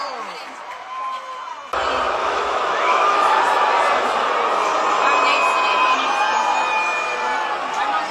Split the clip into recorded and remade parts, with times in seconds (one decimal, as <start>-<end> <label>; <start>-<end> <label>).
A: 0.0-2.2 recorded; 2.2-3.4 remade; 3.4-8.1 recorded